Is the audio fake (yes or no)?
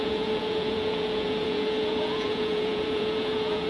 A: yes